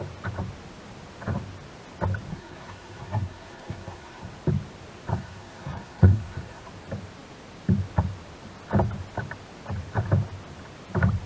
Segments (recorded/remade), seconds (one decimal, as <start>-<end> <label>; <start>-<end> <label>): 0.0-2.3 recorded; 2.3-4.3 remade; 4.3-5.1 recorded; 5.1-6.6 remade; 6.6-11.3 recorded